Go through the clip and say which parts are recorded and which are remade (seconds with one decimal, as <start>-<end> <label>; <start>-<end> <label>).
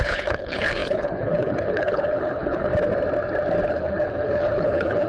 0.0-2.7 remade; 2.7-3.7 recorded; 3.7-5.1 remade